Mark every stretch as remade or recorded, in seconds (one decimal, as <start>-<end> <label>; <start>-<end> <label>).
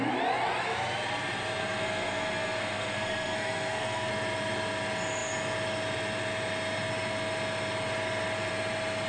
0.0-1.6 recorded; 1.6-4.1 remade; 4.1-9.1 recorded